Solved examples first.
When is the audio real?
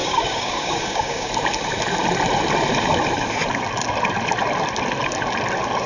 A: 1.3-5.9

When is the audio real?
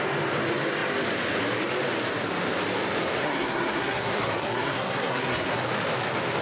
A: 0.0-3.2; 5.6-6.4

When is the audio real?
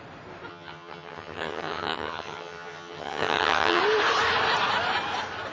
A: 0.0-0.5; 3.8-5.5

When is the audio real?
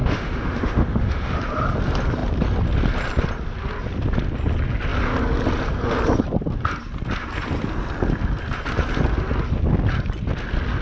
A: 1.4-10.8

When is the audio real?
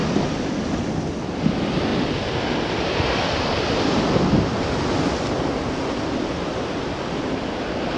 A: 0.0-8.0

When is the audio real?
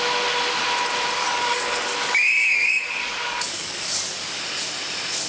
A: 0.0-1.2; 4.4-5.3